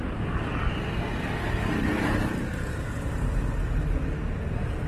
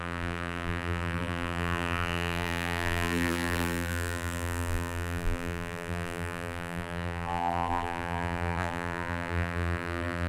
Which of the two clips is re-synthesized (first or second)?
second